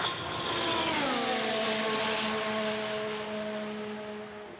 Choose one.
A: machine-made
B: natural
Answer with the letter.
B